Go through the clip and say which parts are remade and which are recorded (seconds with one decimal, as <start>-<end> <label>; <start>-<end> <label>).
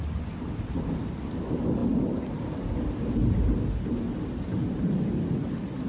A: 0.0-5.9 recorded